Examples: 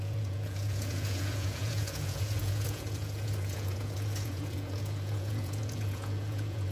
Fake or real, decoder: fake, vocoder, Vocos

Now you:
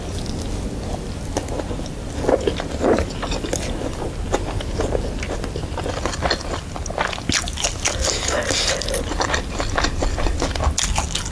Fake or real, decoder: real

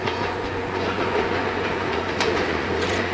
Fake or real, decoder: fake, vocoder, Vocos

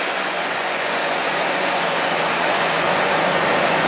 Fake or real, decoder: fake, vocoder, Vocos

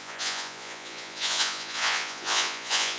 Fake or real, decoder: fake, vocoder, Vocos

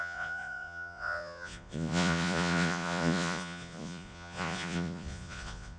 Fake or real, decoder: fake, vocoder, Vocos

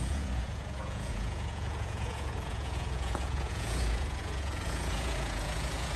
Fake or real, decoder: fake, vocoder, Vocos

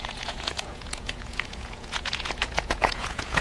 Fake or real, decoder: fake, vocoder, Vocos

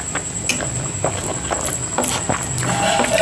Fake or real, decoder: real